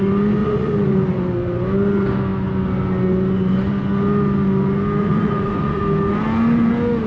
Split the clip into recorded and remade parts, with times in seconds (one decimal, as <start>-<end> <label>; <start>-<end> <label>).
0.0-0.4 recorded; 0.4-1.2 remade; 1.2-5.0 recorded; 5.0-5.8 remade; 5.8-7.1 recorded